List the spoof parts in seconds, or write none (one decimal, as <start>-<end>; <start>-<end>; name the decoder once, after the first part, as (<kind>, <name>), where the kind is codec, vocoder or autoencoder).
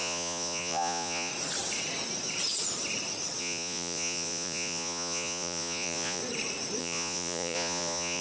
0.0-1.3 (vocoder, Vocos); 3.4-6.2; 6.8-8.2